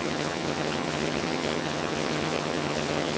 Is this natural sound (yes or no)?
no